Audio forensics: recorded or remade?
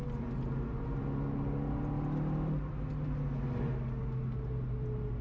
recorded